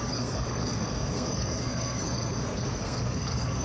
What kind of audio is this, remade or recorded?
remade